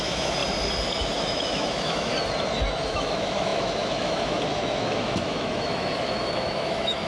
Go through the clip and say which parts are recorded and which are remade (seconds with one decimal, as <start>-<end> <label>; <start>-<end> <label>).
0.0-0.4 remade; 0.4-1.2 recorded; 1.2-2.1 remade; 2.1-2.9 recorded; 2.9-7.1 remade